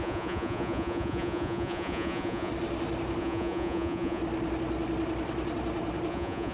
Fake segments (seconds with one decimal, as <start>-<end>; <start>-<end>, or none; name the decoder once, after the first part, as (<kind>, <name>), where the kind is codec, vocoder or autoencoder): 0.0-2.5 (vocoder, Vocos); 3.2-4.2; 6.1-6.5